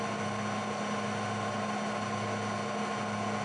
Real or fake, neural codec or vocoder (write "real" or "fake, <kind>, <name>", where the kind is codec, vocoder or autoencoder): real